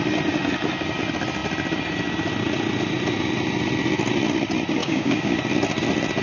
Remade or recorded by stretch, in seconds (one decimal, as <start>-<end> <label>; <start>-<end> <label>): 0.0-4.8 recorded; 4.8-5.4 remade; 5.4-6.2 recorded